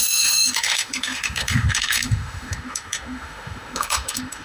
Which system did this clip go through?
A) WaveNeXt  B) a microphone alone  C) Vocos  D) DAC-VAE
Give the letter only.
D